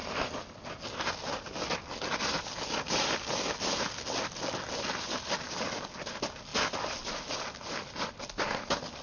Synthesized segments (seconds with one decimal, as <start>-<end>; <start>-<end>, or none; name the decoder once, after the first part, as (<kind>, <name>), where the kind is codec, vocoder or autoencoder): none